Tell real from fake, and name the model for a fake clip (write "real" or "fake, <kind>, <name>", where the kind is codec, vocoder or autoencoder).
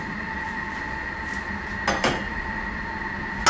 real